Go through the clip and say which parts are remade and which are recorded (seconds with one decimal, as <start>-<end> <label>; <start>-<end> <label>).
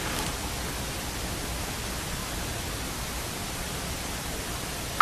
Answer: 0.0-2.2 recorded; 2.2-2.8 remade; 2.8-3.4 recorded; 3.4-4.1 remade; 4.1-5.0 recorded